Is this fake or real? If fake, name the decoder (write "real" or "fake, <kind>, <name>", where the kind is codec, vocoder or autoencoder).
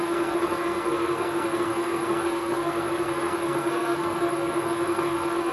fake, codec, SNAC